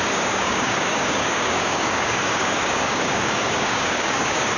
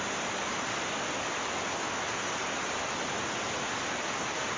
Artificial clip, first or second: first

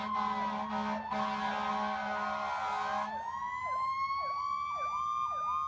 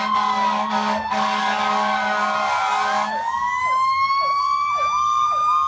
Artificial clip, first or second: second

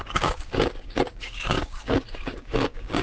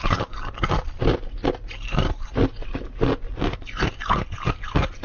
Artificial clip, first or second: first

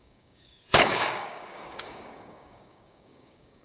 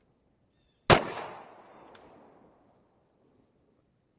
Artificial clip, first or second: first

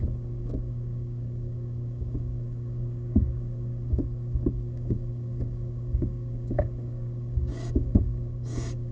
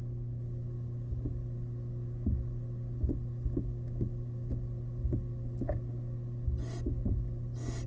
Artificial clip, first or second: first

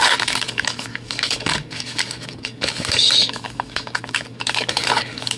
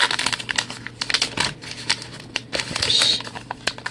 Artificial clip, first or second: first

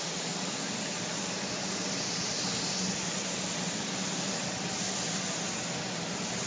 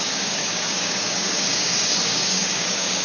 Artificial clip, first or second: second